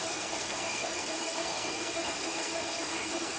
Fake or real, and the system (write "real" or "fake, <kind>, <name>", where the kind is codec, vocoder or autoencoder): fake, codec, SNAC